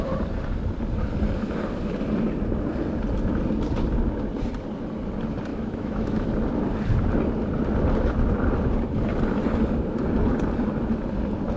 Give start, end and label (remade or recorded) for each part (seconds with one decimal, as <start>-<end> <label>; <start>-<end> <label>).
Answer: 0.0-5.5 recorded; 5.5-6.3 remade; 6.3-11.6 recorded